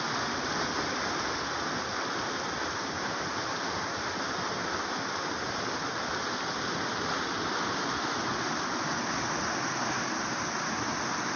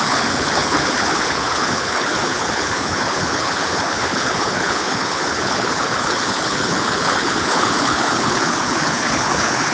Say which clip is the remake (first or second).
second